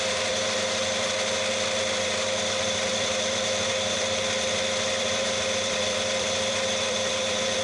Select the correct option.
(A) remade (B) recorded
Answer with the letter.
A